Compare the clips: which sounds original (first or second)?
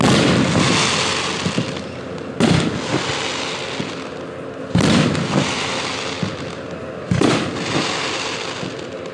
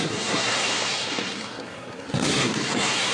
first